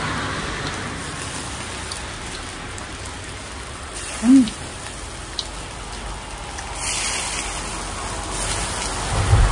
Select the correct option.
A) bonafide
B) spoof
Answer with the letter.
A